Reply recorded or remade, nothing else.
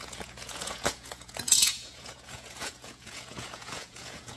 remade